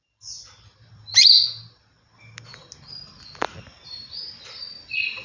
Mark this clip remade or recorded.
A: recorded